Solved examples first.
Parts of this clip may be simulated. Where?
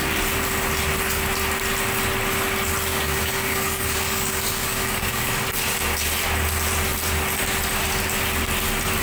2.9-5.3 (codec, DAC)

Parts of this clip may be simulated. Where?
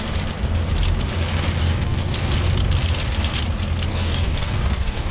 1.6-2.3 (codec, DAC); 3.9-5.1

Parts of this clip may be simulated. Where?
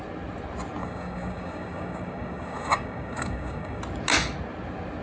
0.8-3.8 (codec, DAC)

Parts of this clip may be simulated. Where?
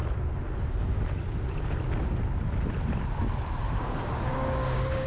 3.8-5.1 (codec, DAC)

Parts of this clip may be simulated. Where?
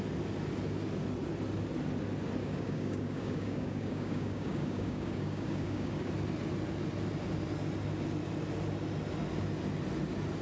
2.4-6.1 (codec, DAC)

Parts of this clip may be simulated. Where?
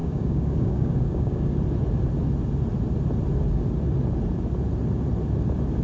0.0-1.5 (codec, DAC)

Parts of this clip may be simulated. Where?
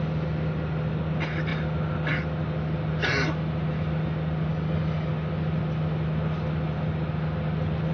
4.5-5.1 (codec, DAC)